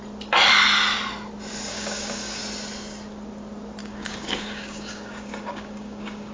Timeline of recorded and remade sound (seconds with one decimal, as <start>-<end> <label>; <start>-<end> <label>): 0.0-1.7 recorded; 1.7-2.4 remade; 2.4-3.8 recorded; 3.8-6.3 remade